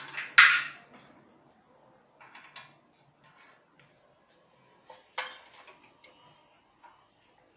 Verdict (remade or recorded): recorded